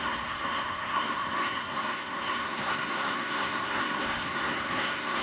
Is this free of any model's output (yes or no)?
no